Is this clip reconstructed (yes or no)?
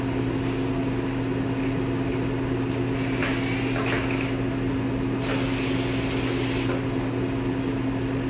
no